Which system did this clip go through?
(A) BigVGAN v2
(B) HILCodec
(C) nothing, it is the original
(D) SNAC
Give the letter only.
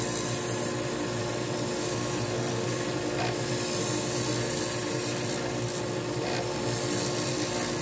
C